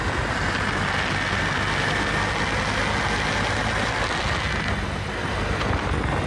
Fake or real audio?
real